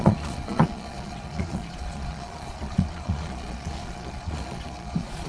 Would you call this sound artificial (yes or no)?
yes